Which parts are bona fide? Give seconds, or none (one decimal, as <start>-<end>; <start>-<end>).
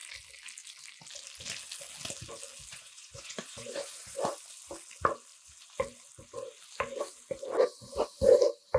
0.0-2.7; 4.3-8.8